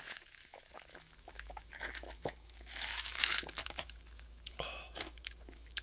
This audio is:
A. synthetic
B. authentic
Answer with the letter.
A